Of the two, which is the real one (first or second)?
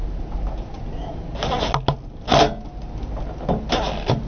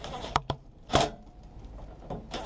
first